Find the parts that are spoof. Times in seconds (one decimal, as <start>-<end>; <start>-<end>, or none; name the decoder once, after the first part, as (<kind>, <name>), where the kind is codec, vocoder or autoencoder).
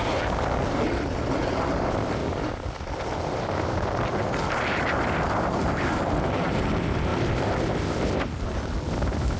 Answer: 2.2-2.8 (codec, DAC)